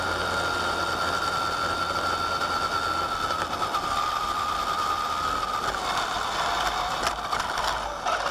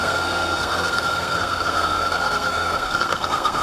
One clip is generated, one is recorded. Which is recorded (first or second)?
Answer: first